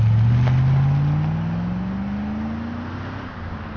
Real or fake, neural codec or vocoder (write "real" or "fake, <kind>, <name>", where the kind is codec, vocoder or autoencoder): real